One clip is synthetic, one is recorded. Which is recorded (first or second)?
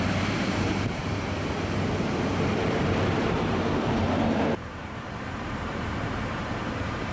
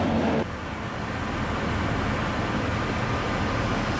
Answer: second